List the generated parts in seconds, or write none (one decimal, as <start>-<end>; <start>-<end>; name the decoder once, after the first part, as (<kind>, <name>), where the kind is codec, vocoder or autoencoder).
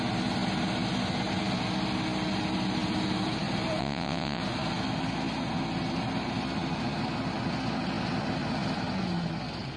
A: 3.8-4.4 (vocoder, WaveNeXt)